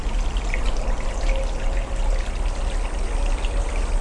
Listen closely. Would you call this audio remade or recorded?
recorded